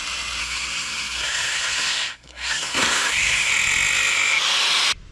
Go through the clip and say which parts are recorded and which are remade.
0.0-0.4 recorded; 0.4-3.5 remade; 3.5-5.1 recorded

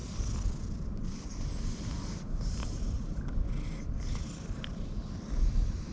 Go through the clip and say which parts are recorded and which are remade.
0.0-5.9 recorded

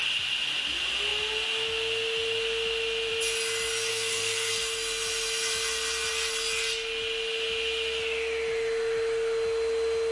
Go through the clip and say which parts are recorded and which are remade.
0.0-3.9 recorded; 3.9-4.5 remade; 4.5-10.1 recorded

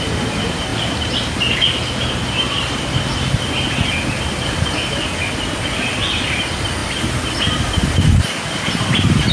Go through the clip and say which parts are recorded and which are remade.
0.0-9.3 recorded

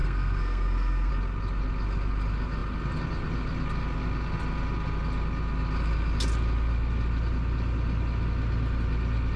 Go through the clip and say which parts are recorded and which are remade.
0.0-1.1 remade; 1.1-9.4 recorded

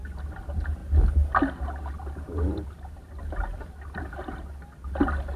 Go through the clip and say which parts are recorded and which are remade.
0.0-5.4 recorded

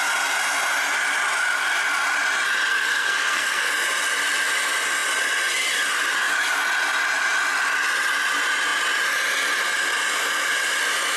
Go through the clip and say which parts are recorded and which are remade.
0.0-2.7 recorded; 2.7-3.7 remade; 3.7-11.2 recorded

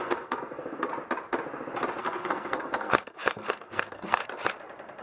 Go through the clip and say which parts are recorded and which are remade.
0.0-0.9 remade; 0.9-2.0 recorded; 2.0-4.2 remade; 4.2-5.0 recorded